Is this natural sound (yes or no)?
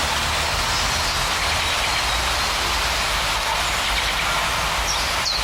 yes